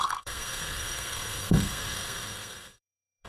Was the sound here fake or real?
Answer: fake